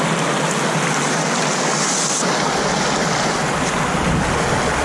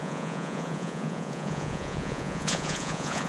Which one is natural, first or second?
first